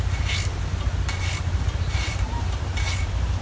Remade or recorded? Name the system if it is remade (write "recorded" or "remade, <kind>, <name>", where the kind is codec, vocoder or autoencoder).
recorded